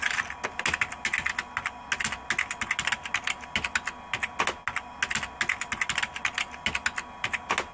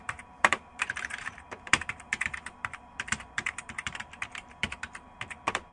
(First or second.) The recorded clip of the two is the first